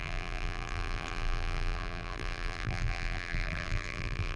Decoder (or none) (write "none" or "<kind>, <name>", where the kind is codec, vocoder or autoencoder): vocoder, BigVGAN v2